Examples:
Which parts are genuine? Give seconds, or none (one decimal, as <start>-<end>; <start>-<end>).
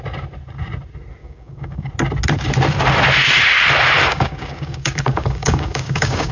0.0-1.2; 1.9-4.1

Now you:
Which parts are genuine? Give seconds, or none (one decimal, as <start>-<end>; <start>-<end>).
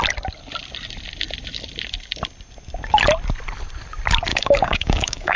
0.0-4.3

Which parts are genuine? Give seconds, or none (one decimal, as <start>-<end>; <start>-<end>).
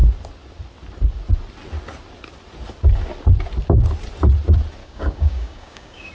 0.0-4.8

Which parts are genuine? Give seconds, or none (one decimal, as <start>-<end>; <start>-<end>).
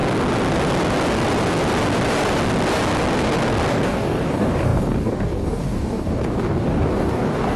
0.0-3.7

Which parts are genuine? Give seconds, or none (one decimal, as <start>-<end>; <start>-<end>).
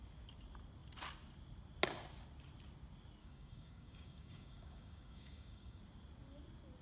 0.0-3.2; 5.8-6.8